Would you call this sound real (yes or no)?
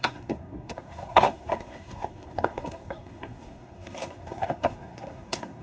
no